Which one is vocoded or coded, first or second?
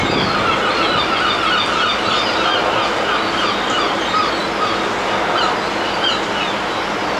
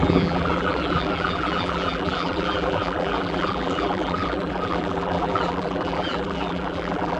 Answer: second